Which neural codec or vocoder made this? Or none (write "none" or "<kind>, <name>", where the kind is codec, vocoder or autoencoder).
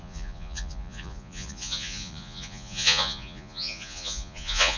vocoder, Vocos